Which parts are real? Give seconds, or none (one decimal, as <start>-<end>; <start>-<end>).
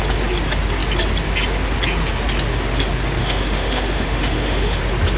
0.0-3.2; 4.8-5.2